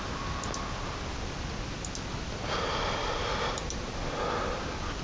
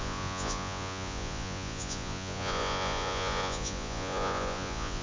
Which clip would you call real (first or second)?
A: first